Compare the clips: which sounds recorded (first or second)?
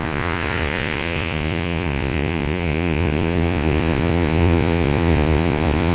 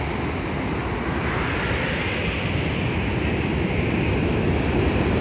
second